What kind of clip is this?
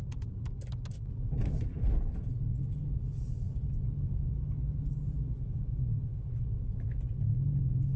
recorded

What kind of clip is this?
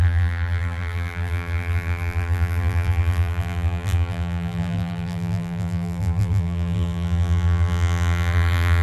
remade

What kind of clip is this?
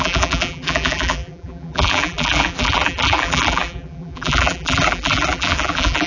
remade